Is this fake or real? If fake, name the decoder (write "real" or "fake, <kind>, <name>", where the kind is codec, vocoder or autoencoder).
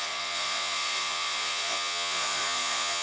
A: fake, vocoder, Vocos